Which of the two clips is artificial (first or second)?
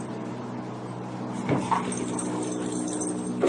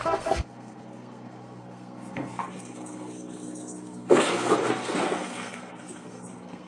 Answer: second